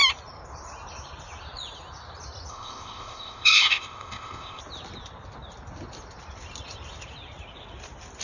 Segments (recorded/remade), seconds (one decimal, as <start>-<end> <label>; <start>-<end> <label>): 0.0-2.5 recorded; 2.5-4.6 remade; 4.6-8.2 recorded